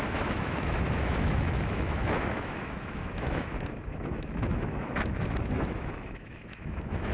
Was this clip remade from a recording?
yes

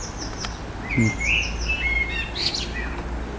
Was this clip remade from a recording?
no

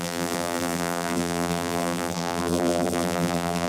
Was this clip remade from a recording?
yes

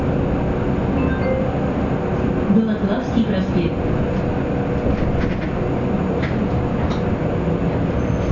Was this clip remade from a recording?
no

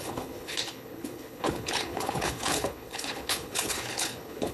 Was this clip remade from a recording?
yes